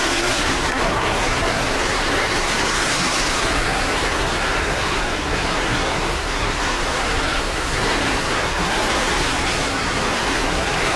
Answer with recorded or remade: remade